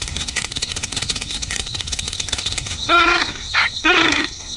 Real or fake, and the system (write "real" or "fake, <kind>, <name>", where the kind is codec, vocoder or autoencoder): fake, codec, SNAC